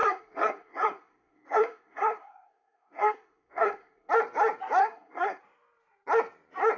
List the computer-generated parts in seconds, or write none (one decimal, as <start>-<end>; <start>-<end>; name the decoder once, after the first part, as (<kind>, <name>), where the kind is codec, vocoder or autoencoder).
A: 0.0-4.1 (codec, SNAC); 4.8-5.4